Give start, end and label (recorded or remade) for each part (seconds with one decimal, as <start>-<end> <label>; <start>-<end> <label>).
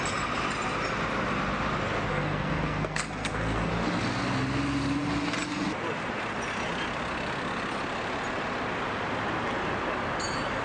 0.0-2.1 recorded; 2.1-3.7 remade; 3.7-10.6 recorded